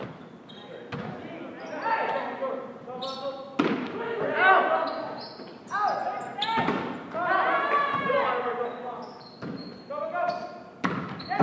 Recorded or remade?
recorded